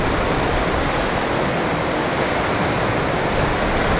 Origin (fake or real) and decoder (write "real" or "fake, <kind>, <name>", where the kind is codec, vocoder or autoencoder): real